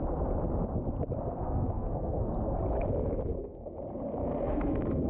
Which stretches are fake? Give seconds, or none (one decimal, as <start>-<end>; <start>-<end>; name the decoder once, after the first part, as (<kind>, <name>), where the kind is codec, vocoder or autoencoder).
1.4-2.3 (codec, SNAC); 3.3-3.8; 4.2-5.1